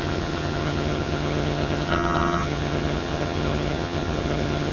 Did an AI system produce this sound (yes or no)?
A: yes